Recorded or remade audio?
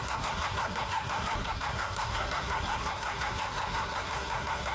remade